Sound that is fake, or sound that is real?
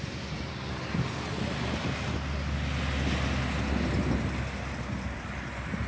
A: real